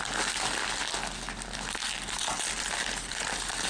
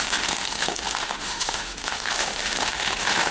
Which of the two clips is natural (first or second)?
first